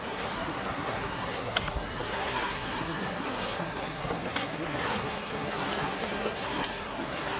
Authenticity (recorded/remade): remade